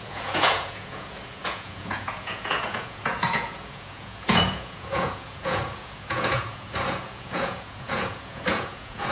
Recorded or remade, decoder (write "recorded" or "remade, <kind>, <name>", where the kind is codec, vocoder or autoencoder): remade, vocoder, Vocos